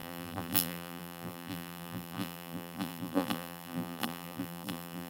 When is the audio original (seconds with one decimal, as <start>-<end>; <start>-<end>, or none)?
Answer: none